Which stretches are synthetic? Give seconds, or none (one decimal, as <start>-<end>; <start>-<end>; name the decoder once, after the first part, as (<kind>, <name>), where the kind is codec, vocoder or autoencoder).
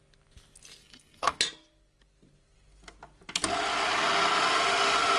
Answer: 0.8-1.4 (codec, SNAC)